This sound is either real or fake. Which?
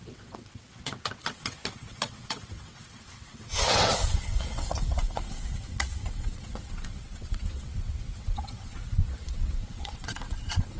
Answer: fake